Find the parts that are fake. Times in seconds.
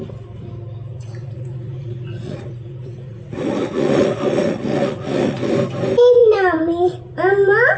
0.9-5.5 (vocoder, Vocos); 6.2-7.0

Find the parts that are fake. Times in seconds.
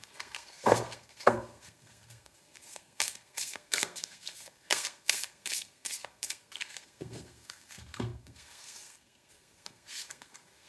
0.0-10.7 (codec, SNAC)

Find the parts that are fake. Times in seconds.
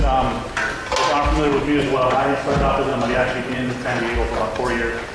1.5-2.5 (vocoder, Vocos); 2.9-4.0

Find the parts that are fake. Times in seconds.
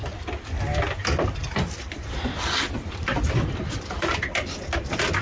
none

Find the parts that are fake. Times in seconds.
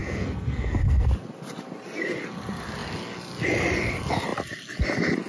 0.0-1.1 (codec, SNAC)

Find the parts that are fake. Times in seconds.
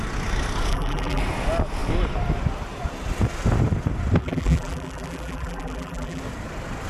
0.7-1.2 (vocoder, BigVGAN v2); 4.2-6.2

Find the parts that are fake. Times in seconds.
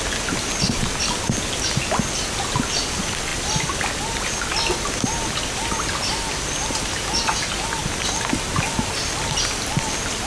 none